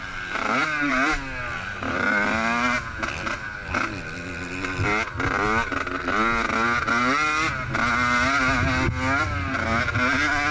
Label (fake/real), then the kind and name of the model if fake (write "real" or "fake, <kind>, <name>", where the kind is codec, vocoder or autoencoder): real